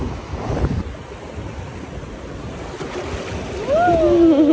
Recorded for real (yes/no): yes